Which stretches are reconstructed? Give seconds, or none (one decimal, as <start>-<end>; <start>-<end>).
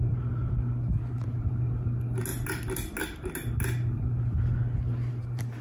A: none